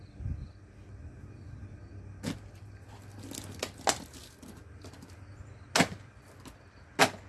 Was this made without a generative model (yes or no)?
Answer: yes